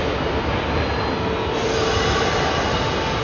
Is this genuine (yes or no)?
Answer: yes